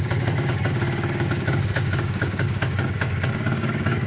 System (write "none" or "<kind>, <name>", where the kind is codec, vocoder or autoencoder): codec, DAC